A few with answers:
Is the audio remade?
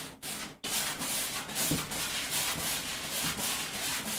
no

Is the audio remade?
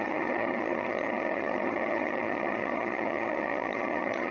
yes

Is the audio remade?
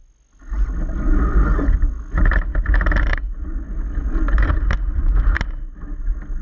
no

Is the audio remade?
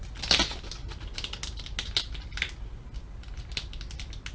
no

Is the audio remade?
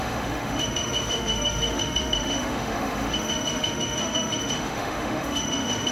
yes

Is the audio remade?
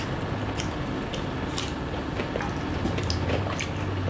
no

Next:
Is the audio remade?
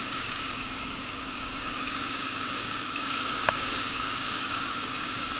yes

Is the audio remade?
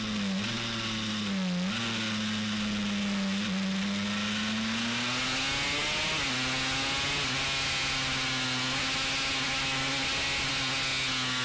no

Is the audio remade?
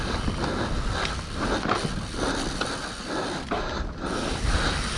no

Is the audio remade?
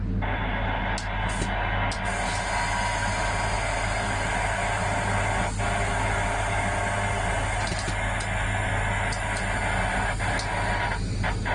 no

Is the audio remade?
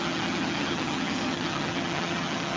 yes